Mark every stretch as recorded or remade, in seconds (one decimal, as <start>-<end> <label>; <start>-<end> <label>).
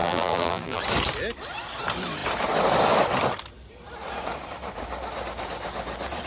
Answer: 0.0-0.8 remade; 0.8-6.3 recorded